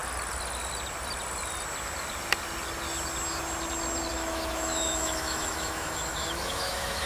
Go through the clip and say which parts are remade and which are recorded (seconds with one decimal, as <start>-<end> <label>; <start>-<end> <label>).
0.0-4.1 recorded; 4.1-7.1 remade